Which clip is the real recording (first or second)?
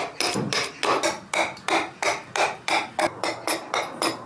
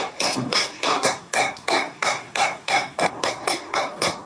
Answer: first